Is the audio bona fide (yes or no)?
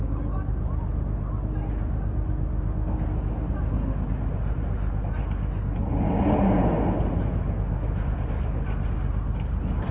yes